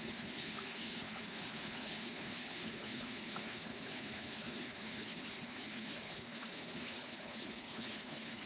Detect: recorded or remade remade